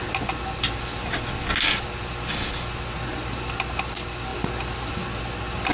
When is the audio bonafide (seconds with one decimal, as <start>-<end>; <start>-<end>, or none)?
0.0-5.7